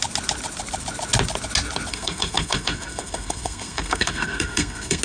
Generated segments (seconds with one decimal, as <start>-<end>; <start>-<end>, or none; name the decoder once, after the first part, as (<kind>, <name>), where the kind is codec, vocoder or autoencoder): 1.9-5.0 (codec, SNAC)